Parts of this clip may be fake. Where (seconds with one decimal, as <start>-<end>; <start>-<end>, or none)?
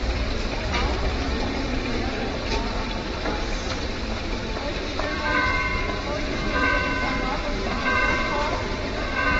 0.0-9.4